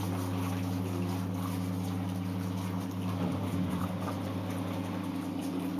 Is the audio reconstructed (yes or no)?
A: no